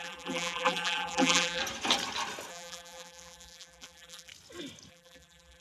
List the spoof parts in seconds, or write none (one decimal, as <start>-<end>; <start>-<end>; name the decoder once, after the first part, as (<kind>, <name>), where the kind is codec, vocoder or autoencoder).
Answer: 0.0-1.6 (vocoder, BigVGAN v2); 2.5-4.3; 4.9-5.6